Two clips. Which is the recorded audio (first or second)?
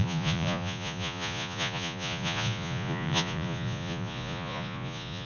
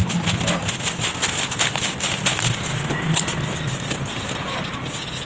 second